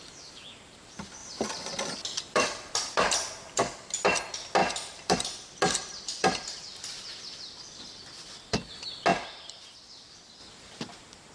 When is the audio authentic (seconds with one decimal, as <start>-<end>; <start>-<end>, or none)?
0.0-1.2; 3.6-4.6; 8.7-11.3